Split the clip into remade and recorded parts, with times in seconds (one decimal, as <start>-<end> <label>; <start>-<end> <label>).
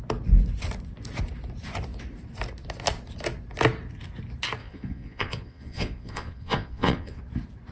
0.0-4.6 recorded; 4.6-7.2 remade; 7.2-7.7 recorded